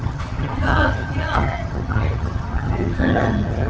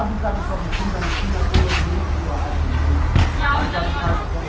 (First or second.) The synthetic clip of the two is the first